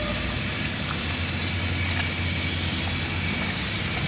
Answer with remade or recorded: recorded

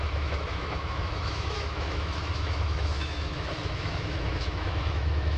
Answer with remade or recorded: remade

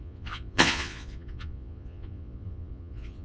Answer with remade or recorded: remade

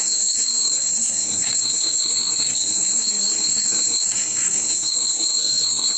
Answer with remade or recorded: remade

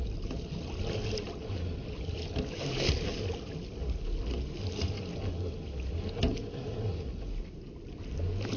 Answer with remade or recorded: recorded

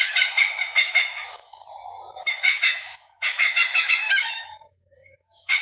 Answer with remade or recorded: remade